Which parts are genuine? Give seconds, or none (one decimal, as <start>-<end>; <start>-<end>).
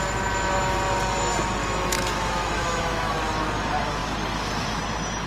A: 0.0-1.6; 3.1-5.3